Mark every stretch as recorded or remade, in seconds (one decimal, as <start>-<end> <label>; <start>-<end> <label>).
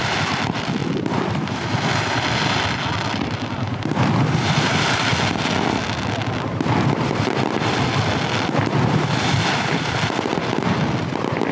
0.0-5.1 remade; 5.1-7.0 recorded; 7.0-10.3 remade; 10.3-11.0 recorded; 11.0-11.5 remade